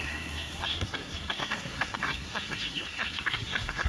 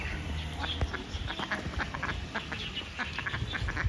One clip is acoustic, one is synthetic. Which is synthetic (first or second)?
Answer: first